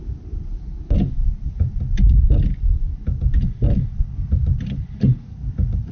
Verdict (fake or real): real